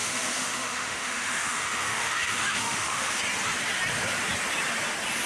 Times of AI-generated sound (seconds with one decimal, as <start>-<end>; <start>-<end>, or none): 0.0-3.2